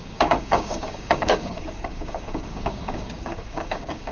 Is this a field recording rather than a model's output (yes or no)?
no